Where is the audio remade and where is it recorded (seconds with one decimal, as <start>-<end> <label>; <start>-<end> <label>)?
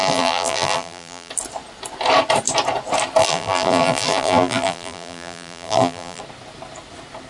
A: 0.0-1.3 remade; 1.3-3.2 recorded; 3.2-6.2 remade; 6.2-7.3 recorded